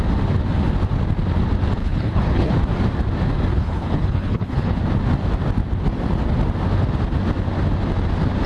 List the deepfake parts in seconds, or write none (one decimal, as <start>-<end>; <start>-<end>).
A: 1.8-2.5; 3.5-4.8